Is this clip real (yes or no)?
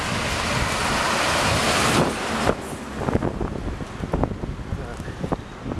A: yes